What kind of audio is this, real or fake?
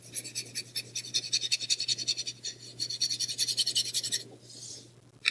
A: real